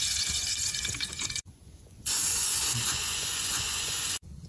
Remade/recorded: remade